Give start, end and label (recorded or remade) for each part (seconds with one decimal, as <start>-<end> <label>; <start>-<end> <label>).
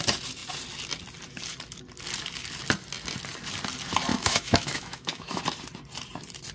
0.0-4.1 recorded; 4.1-5.4 remade; 5.4-6.5 recorded